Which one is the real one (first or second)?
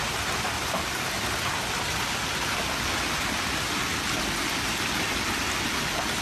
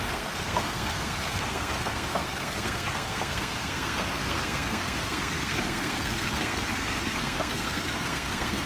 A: first